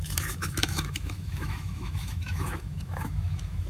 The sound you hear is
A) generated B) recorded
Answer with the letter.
A